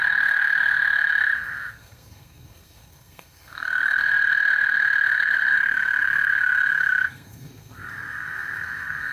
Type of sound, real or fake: fake